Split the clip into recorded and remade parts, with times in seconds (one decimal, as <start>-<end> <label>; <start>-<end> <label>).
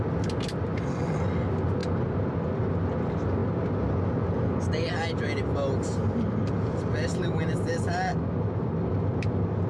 0.0-9.7 recorded